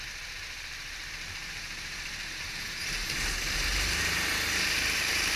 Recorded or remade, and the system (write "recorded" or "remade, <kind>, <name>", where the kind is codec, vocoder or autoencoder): remade, vocoder, BigVGAN v2